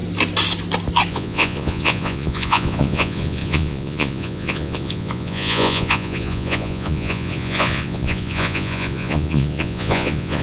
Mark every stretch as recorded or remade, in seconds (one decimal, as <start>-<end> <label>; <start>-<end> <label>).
0.0-1.1 recorded; 1.1-10.4 remade